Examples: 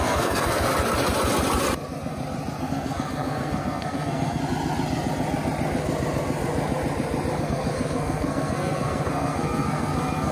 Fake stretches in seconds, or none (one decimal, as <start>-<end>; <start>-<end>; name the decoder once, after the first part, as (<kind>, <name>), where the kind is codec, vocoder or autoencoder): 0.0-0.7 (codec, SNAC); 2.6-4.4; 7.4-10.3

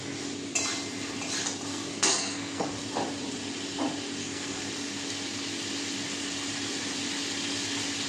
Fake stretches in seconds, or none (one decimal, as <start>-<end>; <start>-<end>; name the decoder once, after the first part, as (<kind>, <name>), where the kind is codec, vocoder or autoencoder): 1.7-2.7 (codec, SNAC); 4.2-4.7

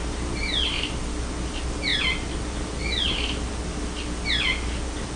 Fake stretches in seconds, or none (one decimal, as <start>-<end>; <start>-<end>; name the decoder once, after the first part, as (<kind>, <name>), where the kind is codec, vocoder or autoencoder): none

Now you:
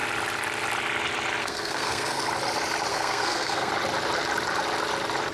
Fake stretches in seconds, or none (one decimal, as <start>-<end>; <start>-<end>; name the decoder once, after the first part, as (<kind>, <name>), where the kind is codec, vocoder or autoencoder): 1.4-2.2 (codec, SNAC); 2.9-3.7

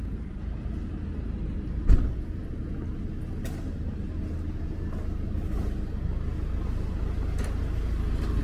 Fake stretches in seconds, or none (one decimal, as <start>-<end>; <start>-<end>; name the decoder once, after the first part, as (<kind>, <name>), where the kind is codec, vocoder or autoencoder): none

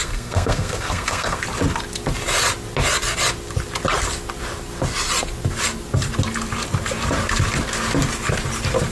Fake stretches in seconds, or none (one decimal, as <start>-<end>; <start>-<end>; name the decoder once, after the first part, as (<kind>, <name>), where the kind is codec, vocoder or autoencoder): 0.0-1.4 (codec, SNAC)